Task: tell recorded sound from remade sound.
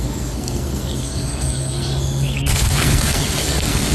remade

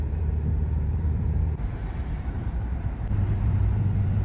remade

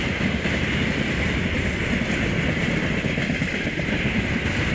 recorded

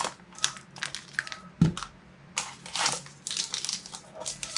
recorded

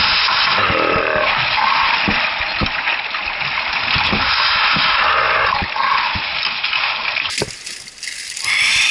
recorded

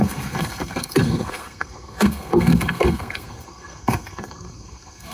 remade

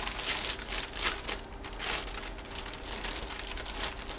recorded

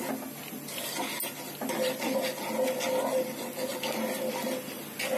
recorded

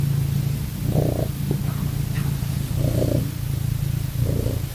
recorded